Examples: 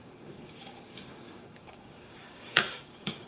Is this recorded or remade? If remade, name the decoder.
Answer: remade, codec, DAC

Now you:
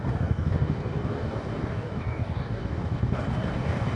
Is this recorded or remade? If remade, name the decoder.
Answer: remade, codec, DAC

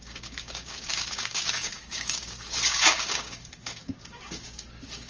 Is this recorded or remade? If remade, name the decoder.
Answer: remade, codec, DAC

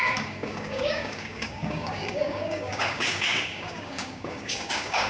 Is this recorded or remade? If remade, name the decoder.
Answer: remade, codec, DAC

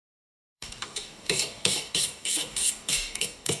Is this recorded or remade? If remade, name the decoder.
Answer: remade, codec, DAC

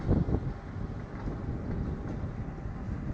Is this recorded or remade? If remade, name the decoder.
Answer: recorded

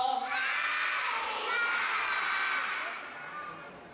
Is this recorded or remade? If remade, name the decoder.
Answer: recorded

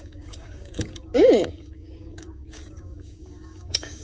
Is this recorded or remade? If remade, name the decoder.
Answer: remade, codec, DAC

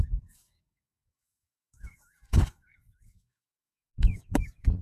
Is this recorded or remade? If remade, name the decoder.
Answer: remade, codec, DAC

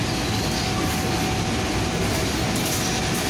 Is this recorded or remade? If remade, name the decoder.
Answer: recorded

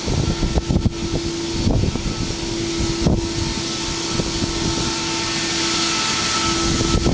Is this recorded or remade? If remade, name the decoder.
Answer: recorded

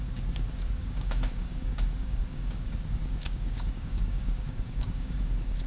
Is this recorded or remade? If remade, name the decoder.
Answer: remade, codec, DAC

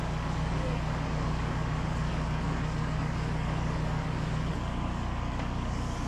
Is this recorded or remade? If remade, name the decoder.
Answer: remade, codec, DAC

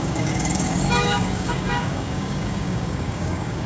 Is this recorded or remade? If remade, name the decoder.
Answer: remade, codec, DAC